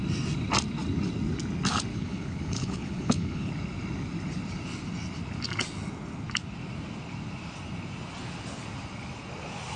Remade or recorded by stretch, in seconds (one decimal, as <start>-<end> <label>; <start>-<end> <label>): 0.0-1.9 recorded; 1.9-3.5 remade; 3.5-9.8 recorded